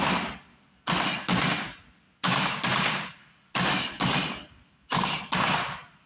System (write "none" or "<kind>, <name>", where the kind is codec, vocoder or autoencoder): none